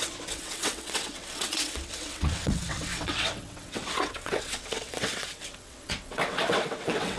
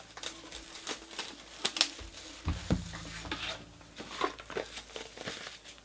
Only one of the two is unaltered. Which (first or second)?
second